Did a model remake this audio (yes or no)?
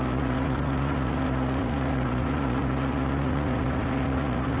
yes